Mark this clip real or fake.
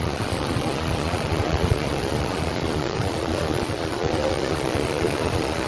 fake